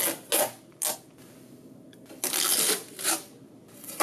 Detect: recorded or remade recorded